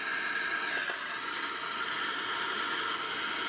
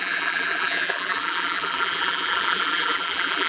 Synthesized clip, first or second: second